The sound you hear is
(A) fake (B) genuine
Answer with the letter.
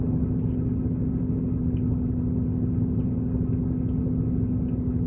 B